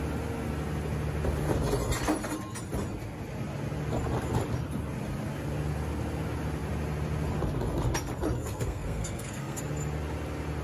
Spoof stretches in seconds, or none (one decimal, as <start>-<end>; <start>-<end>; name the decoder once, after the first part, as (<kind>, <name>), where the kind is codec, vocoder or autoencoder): 8.4-9.6 (codec, SNAC)